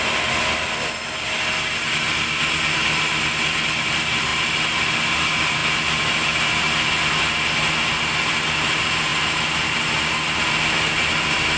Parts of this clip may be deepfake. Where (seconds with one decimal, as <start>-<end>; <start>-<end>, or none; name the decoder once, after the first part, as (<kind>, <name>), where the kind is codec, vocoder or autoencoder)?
none